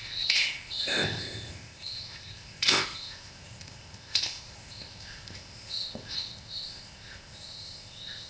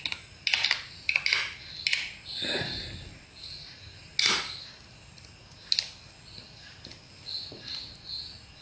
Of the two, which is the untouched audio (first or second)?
second